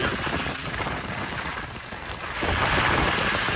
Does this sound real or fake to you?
real